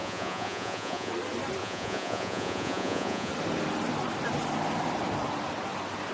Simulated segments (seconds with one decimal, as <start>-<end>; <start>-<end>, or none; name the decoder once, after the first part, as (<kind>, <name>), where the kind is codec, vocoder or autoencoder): 0.0-1.1 (vocoder, Vocos); 1.6-3.3

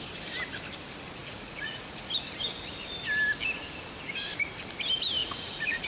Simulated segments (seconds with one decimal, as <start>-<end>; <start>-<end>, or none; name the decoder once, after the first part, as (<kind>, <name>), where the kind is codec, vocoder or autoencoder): 1.2-2.1 (vocoder, Vocos); 5.2-5.9

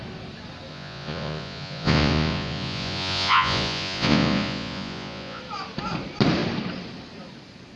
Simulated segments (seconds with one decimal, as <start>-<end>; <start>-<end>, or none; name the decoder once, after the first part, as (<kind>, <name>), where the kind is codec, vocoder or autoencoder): 0.7-5.4 (vocoder, Vocos)

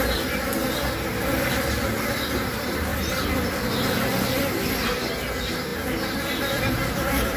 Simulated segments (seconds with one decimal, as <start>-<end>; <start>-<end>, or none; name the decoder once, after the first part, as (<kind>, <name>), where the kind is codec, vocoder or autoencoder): none